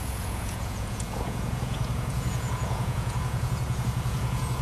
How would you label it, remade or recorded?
remade